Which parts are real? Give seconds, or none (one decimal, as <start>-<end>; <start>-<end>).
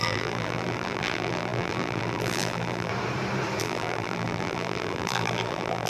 2.9-3.6